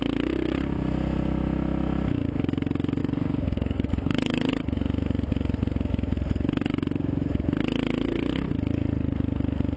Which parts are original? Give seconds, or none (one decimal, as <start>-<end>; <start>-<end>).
0.0-3.0; 4.5-9.8